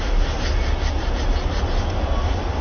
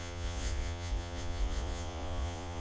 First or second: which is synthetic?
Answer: second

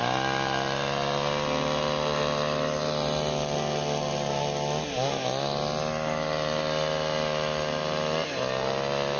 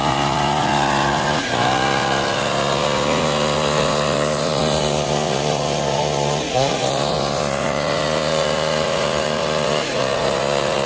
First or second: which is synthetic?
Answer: second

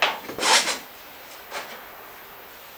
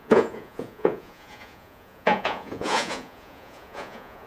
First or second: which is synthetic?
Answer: second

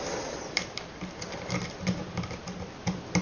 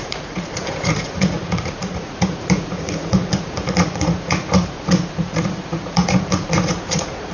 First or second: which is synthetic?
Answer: second